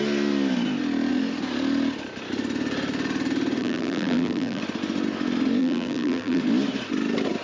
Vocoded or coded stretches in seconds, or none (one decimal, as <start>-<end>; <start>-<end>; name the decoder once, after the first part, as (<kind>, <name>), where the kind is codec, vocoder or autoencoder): 3.6-4.6 (vocoder, BigVGAN v2); 5.6-6.4